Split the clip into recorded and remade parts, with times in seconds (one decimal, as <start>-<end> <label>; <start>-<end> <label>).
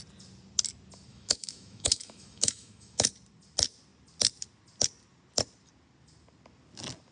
0.0-1.1 recorded; 1.1-3.1 remade; 3.1-7.1 recorded